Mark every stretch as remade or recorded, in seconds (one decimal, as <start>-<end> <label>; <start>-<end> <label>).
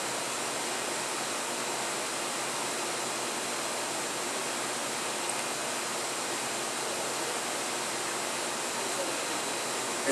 0.0-10.1 recorded